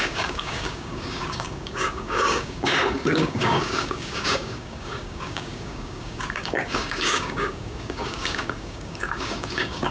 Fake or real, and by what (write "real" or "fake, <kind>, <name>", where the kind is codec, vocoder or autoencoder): fake, codec, DAC